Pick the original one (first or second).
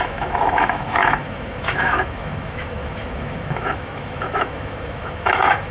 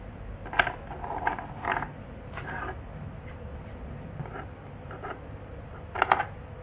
second